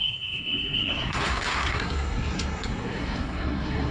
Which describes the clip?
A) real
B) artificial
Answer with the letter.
B